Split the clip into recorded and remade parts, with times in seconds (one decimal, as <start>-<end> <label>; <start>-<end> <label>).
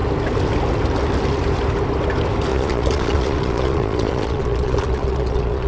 0.0-2.5 recorded; 2.5-5.7 remade